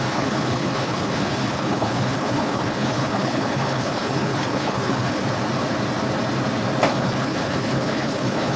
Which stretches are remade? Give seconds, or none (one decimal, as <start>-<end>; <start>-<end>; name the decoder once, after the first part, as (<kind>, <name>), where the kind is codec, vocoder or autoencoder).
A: 0.0-5.2 (codec, HILCodec); 6.9-8.6